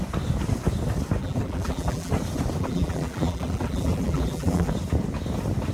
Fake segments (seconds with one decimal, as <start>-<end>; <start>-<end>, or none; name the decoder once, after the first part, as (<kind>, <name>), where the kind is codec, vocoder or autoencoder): 1.2-2.1 (vocoder, BigVGAN v2); 2.6-4.7